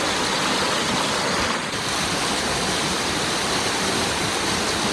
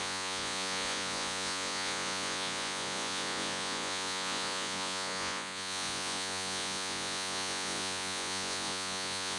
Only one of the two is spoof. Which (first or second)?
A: second